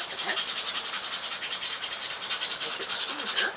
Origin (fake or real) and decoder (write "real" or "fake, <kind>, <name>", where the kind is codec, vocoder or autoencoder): real